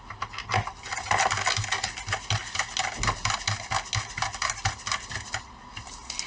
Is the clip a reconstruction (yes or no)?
no